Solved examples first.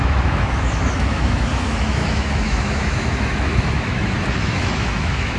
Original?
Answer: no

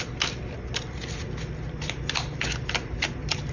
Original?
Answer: yes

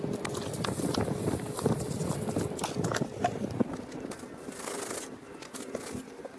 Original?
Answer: yes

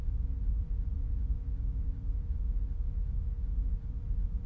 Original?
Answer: yes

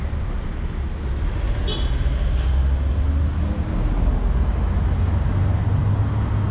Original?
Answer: yes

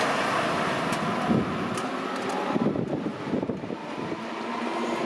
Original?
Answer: yes